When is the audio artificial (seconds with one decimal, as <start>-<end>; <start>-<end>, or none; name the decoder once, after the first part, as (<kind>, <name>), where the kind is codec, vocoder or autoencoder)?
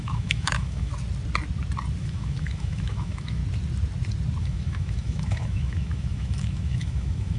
0.0-0.9 (autoencoder, DAC-VAE); 2.0-3.4; 4.4-7.4